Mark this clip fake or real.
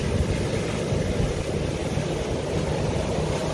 real